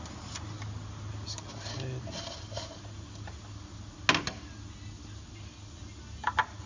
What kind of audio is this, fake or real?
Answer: real